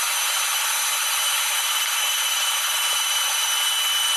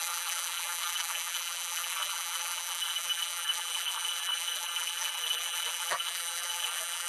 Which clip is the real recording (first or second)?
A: first